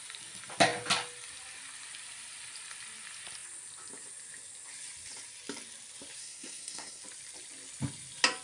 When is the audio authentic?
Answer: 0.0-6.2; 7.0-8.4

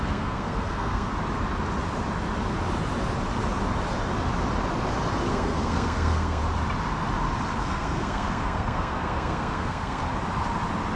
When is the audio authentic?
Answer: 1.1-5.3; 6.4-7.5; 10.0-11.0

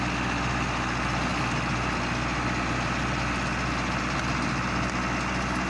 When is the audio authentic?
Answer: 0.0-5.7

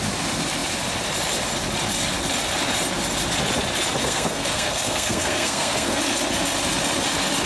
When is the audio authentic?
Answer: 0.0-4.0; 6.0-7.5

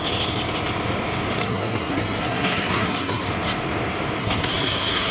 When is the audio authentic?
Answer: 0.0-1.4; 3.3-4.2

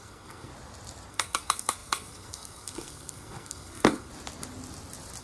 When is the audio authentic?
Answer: 0.5-1.1; 4.1-5.2